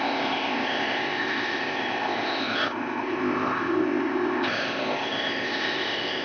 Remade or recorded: remade